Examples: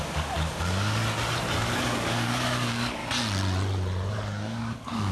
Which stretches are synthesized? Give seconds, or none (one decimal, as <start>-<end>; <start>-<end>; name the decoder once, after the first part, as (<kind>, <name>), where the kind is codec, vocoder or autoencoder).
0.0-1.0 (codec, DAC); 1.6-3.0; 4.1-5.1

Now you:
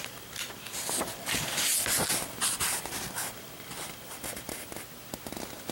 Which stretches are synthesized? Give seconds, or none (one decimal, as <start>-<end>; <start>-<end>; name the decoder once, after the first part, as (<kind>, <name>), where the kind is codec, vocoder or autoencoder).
none

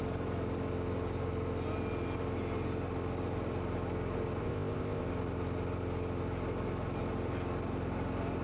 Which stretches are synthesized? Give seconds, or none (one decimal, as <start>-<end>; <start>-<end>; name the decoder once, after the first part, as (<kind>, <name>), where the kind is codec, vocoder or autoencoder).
4.4-5.0 (codec, ZipCodec)

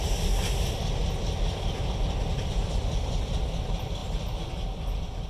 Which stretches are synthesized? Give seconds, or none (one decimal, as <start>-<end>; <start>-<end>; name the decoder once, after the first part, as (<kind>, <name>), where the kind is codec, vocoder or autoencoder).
2.0-4.0 (vocoder, BigVGAN v2)

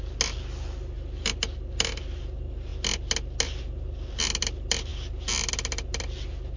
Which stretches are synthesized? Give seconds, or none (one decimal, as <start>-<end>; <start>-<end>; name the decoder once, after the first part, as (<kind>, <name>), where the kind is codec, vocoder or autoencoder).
none

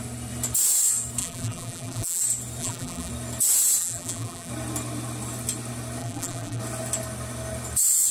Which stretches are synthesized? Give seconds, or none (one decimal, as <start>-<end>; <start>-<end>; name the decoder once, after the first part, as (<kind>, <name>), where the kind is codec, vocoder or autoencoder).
1.2-2.2 (vocoder, BigVGAN v2); 2.6-3.1; 3.8-4.5; 6.0-6.6